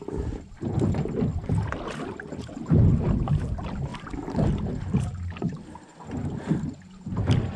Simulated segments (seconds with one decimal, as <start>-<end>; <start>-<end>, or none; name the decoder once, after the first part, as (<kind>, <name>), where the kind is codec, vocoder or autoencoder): none